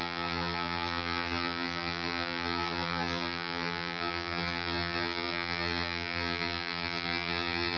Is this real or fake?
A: fake